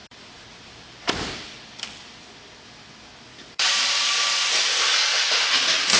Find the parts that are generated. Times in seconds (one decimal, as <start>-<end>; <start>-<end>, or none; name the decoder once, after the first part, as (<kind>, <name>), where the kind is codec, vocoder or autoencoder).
0.0-2.2 (vocoder, BigVGAN v2)